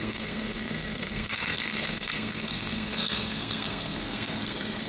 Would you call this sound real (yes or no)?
no